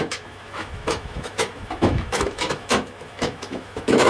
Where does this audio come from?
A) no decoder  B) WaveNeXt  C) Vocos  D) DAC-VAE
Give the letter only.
D